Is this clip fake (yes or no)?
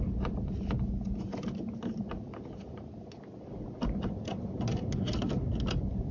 no